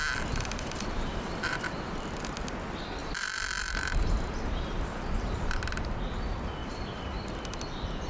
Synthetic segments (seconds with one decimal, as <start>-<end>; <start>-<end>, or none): 1.1-1.9; 3.0-5.6; 6.6-7.3